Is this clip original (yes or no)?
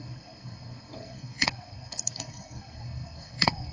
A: no